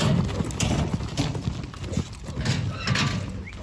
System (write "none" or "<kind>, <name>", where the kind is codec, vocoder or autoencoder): none